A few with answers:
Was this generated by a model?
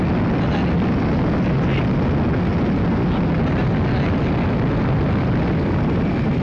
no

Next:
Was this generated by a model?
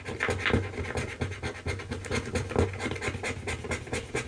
no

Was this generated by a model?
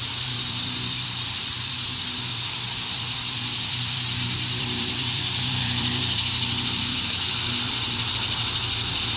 yes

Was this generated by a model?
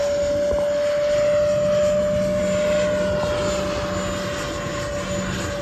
no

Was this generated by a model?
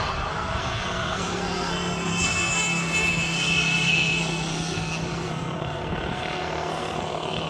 yes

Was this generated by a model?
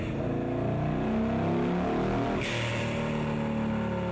no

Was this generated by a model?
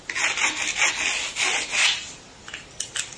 no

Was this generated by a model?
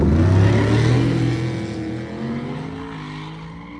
no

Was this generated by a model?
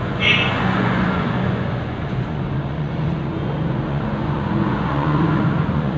yes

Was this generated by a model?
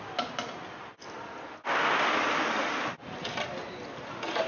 no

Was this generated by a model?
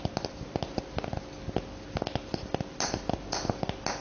no